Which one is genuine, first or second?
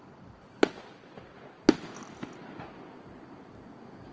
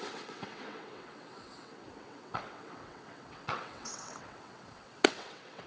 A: first